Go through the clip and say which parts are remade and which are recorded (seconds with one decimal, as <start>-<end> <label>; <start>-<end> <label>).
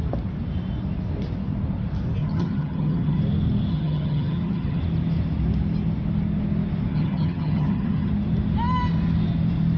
0.0-2.2 recorded; 2.2-3.2 remade; 3.2-3.7 recorded; 3.7-4.8 remade; 4.8-6.9 recorded; 6.9-8.1 remade; 8.1-9.8 recorded